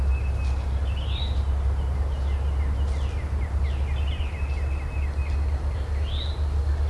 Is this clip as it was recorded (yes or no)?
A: yes